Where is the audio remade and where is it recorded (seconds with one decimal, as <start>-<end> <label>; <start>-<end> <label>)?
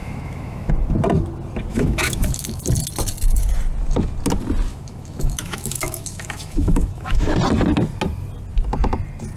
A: 0.0-0.7 remade; 0.7-1.7 recorded; 1.7-2.6 remade; 2.6-4.7 recorded; 4.7-7.3 remade; 7.3-9.4 recorded